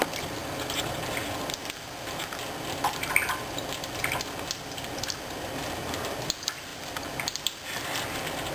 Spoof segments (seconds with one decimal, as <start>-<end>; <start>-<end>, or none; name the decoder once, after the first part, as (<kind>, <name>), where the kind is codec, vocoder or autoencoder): none